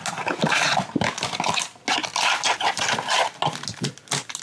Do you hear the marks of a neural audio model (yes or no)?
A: no